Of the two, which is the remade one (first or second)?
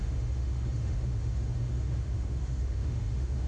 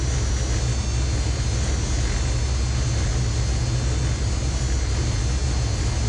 first